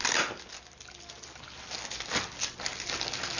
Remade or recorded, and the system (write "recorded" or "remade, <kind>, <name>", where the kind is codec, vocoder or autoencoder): recorded